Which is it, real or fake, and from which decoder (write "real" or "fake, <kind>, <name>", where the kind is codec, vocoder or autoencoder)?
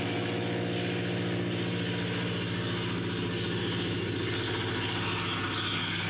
real